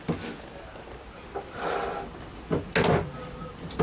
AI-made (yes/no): no